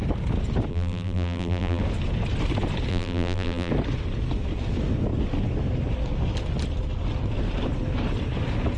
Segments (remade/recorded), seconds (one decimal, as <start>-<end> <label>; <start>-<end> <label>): 0.0-0.7 recorded; 0.7-1.8 remade; 1.8-2.9 recorded; 2.9-3.7 remade; 3.7-8.8 recorded